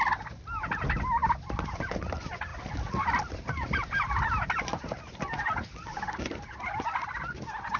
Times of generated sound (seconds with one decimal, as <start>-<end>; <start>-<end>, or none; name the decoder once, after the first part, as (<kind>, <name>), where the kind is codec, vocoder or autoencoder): 0.0-7.8 (vocoder, BigVGAN v2)